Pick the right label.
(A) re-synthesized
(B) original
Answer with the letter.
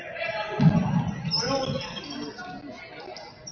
B